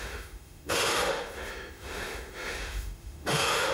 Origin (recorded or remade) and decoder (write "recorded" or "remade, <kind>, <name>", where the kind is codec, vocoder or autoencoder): remade, autoencoder, DAC-VAE